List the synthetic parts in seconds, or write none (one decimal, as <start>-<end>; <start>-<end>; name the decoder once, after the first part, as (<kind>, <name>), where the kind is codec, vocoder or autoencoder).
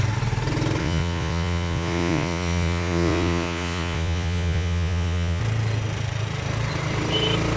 0.8-5.4 (vocoder, Vocos)